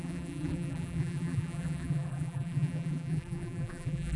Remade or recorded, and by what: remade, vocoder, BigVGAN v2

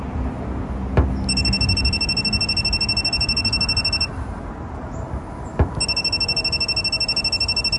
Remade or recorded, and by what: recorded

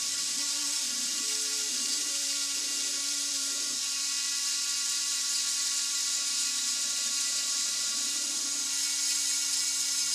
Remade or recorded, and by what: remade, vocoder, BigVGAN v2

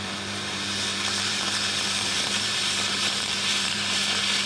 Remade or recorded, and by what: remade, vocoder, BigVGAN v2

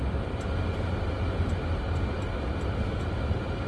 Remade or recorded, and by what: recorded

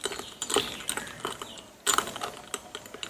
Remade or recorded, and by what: recorded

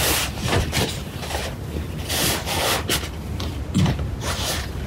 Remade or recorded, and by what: recorded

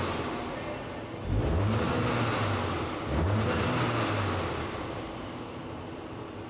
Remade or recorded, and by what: recorded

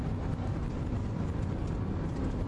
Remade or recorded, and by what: recorded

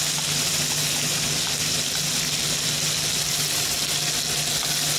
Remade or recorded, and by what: recorded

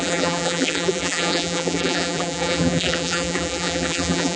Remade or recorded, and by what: remade, vocoder, BigVGAN v2